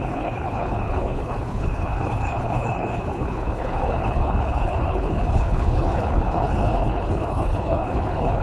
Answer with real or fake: fake